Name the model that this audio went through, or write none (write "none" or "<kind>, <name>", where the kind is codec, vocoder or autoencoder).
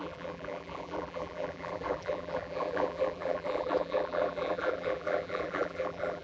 vocoder, BigVGAN v2